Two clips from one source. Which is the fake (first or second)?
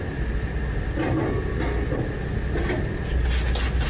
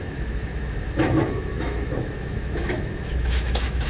second